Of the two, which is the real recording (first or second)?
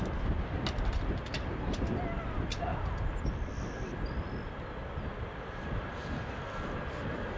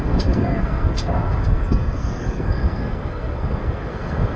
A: first